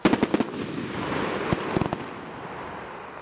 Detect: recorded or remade recorded